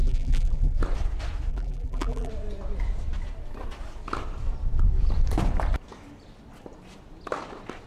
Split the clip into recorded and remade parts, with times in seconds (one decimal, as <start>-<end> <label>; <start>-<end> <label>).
0.0-0.8 remade; 0.8-1.5 recorded; 1.5-2.3 remade; 2.3-7.9 recorded